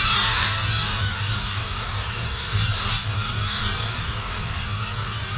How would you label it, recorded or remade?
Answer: remade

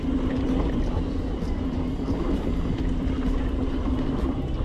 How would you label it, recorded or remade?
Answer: recorded